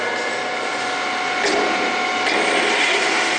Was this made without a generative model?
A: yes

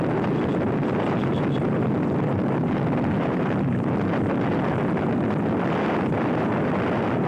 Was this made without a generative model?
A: no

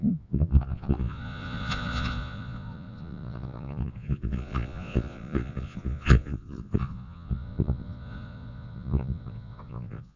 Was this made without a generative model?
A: no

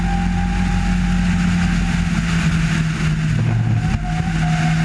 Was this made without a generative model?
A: yes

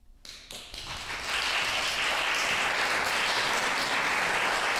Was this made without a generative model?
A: yes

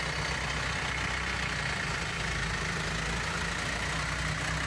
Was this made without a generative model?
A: yes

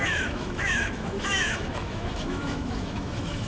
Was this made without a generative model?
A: no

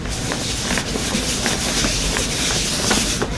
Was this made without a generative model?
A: yes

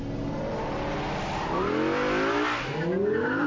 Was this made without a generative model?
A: yes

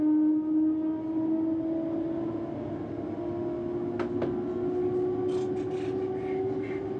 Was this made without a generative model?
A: yes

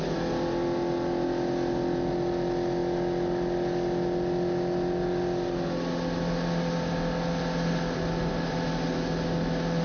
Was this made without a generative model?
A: yes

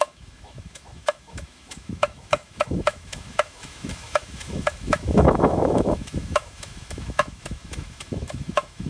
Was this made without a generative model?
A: no